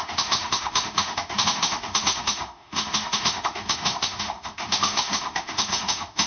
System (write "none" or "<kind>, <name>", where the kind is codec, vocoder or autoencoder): autoencoder, DAC-VAE